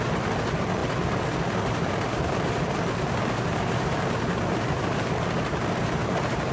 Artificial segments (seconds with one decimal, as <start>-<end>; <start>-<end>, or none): none